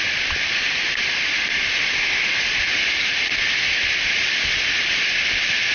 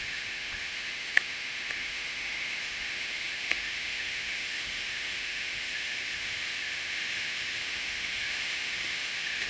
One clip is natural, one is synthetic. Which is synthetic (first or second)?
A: second